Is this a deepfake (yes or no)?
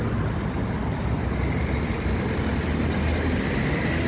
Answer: no